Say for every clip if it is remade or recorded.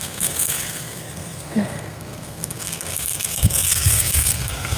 remade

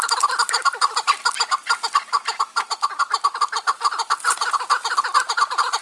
recorded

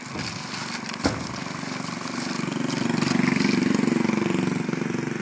recorded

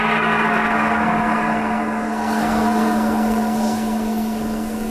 remade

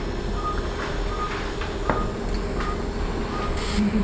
recorded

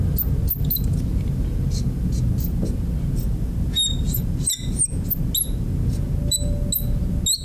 recorded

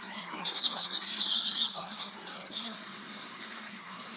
remade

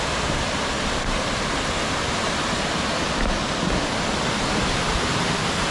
recorded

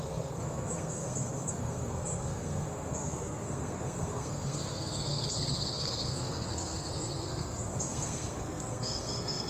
remade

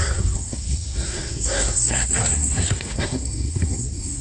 remade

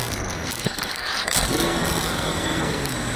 remade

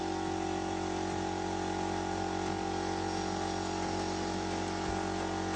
recorded